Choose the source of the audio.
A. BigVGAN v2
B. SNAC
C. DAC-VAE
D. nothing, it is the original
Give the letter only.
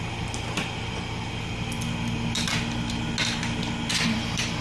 D